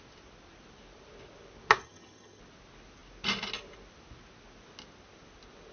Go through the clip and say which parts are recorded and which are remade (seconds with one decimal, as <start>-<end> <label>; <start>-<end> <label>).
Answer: 0.0-1.8 recorded; 1.8-2.4 remade; 2.4-5.7 recorded